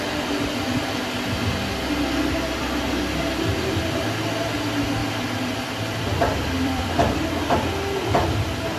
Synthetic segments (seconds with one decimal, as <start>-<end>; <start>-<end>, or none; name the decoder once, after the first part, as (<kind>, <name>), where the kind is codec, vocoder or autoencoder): 5.0-7.5 (vocoder, BigVGAN v2)